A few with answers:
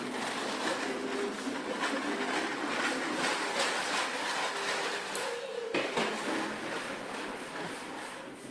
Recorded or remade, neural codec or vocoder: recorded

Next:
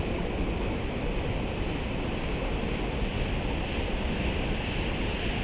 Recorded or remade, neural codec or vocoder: recorded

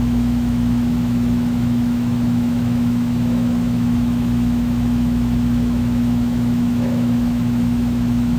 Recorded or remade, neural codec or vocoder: remade, autoencoder, DAC-VAE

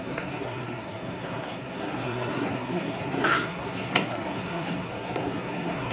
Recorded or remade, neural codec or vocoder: remade, codec, SNAC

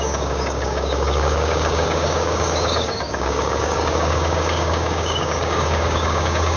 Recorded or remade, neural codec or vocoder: remade, codec, DAC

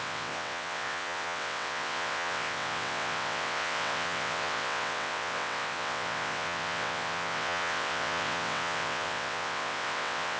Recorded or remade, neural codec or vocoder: remade, vocoder, WaveNeXt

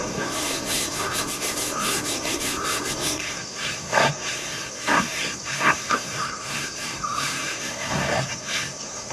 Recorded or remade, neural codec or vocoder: remade, codec, SNAC